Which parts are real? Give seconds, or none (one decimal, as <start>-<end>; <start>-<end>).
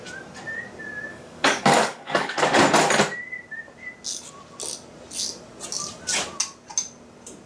0.0-1.1; 2.6-7.5